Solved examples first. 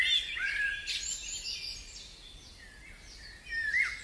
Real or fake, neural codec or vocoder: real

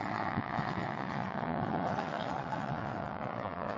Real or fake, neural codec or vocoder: fake, vocoder, WaveNeXt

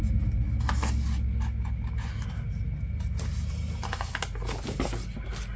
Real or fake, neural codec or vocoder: real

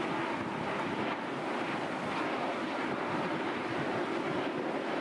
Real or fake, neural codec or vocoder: real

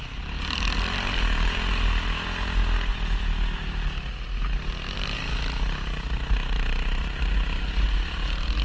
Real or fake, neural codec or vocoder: real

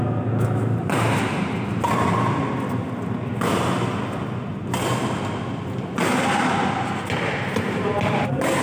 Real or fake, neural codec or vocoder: real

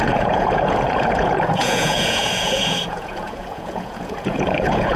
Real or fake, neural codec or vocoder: fake, vocoder, Vocos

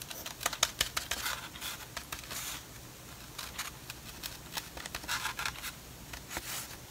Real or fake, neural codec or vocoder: real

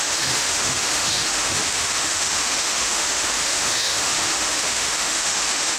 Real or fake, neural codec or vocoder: fake, autoencoder, DAC-VAE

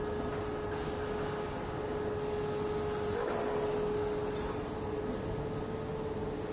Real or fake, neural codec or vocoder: real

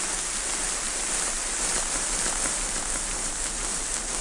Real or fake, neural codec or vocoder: real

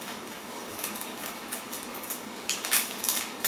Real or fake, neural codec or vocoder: fake, codec, DAC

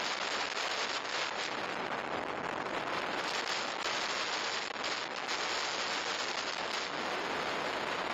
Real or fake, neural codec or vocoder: real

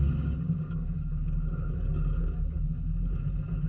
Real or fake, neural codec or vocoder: real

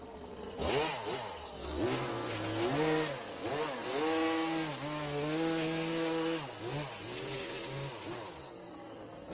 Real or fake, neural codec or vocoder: real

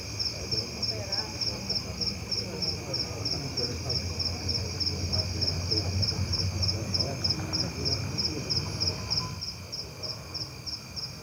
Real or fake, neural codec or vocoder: real